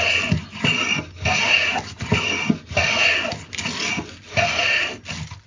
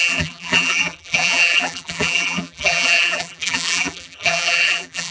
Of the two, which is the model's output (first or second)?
second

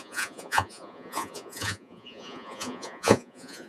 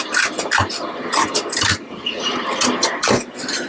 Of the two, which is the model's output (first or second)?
first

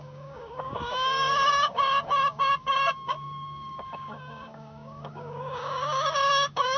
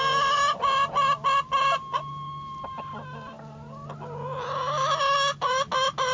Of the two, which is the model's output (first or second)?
first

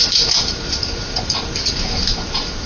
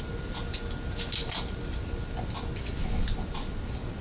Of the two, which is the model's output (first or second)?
first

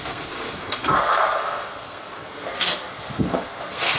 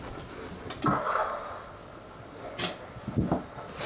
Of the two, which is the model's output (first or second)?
first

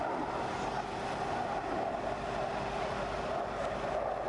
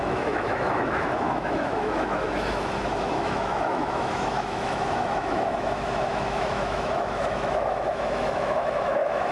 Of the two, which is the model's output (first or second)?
second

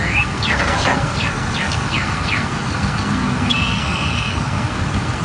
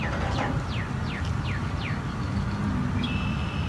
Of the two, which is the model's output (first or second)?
first